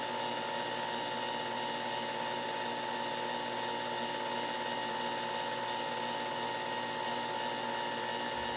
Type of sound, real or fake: real